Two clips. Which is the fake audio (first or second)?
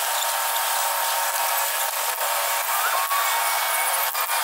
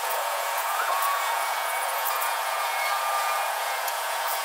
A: second